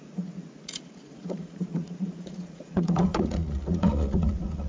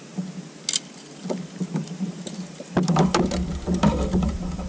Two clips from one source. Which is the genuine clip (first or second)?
second